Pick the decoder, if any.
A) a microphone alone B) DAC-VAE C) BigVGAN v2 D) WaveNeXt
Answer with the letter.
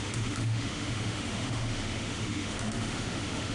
B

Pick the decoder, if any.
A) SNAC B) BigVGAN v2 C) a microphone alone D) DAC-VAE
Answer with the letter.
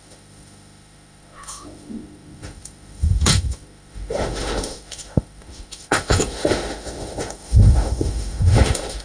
D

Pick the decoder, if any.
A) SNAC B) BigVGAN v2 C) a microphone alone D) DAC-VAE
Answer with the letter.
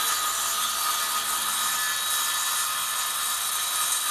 C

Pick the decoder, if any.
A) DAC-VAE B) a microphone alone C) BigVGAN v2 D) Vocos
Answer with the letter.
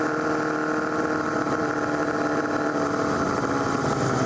B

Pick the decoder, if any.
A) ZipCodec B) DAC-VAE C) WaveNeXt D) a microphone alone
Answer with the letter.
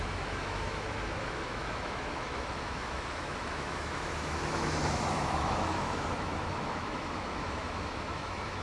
B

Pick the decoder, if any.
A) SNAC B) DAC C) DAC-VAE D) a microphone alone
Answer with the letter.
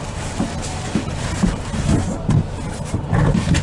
D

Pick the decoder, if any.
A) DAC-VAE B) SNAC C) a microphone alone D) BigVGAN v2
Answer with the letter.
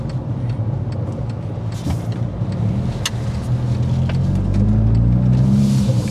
C